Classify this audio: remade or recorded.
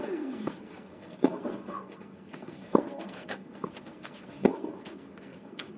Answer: remade